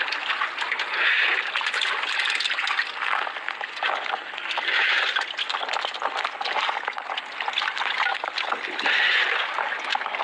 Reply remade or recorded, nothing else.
recorded